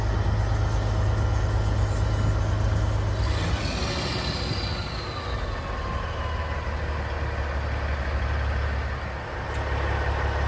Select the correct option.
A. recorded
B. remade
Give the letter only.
A